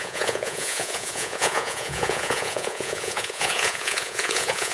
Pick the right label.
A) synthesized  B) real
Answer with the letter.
A